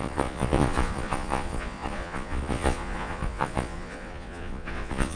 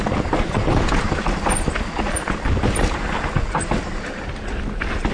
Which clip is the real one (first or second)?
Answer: second